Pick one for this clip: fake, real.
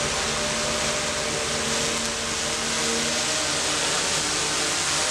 real